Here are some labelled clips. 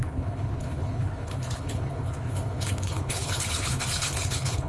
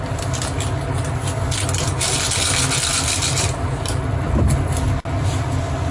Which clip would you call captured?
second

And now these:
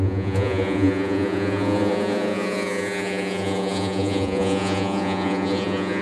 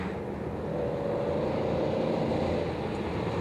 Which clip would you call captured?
second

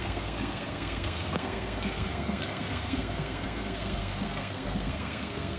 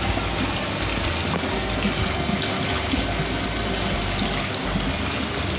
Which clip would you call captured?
second